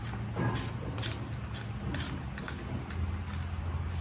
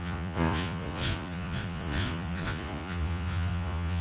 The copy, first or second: second